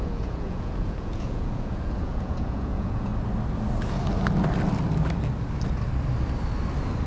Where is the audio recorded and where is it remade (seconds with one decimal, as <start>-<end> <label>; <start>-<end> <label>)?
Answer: 0.0-3.1 remade; 3.1-7.1 recorded